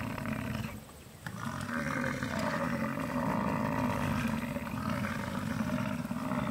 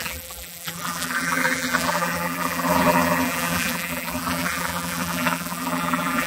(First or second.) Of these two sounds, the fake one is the second